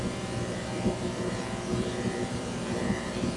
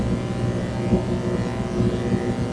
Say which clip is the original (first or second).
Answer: second